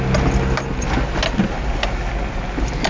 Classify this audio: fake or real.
real